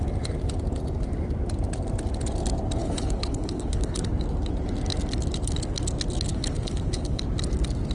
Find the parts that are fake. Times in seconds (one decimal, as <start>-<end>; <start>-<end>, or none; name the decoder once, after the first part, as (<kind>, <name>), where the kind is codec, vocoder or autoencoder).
2.8-4.1 (codec, HILCodec); 6.3-7.2